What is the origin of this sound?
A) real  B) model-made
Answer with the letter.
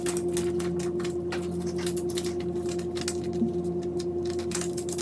A